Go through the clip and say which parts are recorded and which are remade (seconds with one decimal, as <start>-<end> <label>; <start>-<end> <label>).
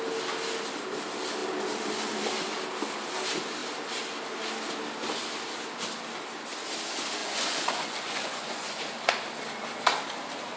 0.0-7.2 recorded; 7.2-8.8 remade; 8.8-10.6 recorded